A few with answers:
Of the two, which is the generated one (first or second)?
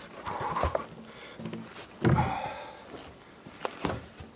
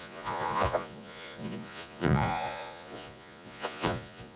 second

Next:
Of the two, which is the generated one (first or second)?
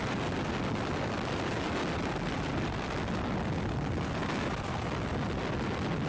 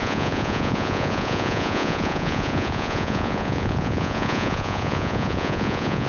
second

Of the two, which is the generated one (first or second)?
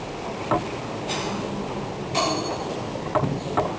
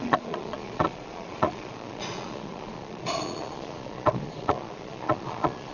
second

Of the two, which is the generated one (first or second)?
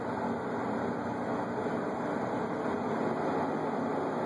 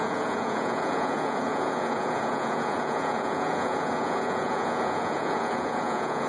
second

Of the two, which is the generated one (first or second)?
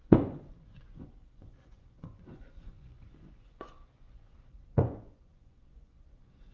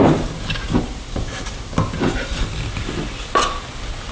first